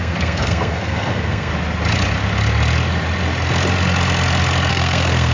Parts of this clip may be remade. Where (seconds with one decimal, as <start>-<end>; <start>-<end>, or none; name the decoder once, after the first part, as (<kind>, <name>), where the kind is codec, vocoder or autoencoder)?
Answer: 0.0-1.5 (codec, SNAC); 4.7-5.3